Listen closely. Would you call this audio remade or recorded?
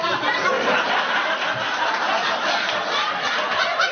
recorded